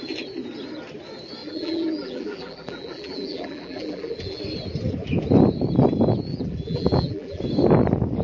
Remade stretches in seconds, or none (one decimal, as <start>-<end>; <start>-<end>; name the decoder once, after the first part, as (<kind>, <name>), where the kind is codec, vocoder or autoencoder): 1.4-4.4 (vocoder, BigVGAN v2); 6.3-7.4